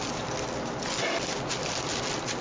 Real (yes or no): yes